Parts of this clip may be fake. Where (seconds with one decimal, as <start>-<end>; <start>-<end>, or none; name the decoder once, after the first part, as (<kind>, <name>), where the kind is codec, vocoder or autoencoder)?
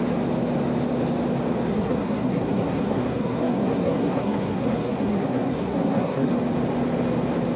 1.7-6.3 (codec, SNAC)